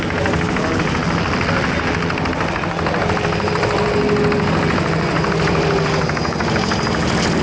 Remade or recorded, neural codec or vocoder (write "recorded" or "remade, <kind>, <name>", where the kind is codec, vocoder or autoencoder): recorded